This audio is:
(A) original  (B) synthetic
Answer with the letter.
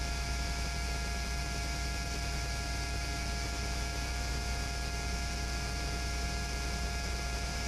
B